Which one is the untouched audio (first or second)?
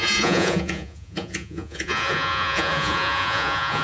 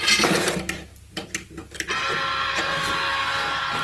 second